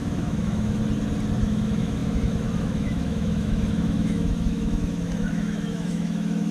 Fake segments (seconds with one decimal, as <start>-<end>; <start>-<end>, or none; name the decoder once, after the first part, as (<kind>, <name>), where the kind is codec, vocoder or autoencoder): 0.0-0.8 (autoencoder, DAC-VAE); 1.4-6.5